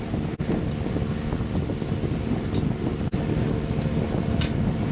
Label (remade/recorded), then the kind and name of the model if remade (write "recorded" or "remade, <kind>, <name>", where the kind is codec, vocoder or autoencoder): recorded